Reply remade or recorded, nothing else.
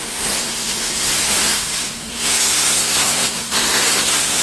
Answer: remade